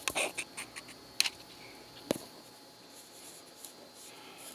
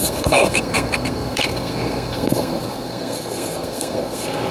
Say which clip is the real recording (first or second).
first